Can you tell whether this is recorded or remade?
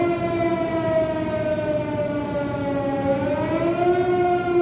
recorded